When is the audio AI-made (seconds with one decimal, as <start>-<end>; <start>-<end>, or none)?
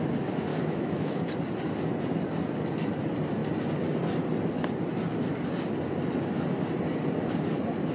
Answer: 0.5-1.2